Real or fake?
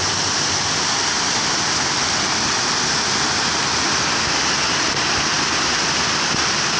fake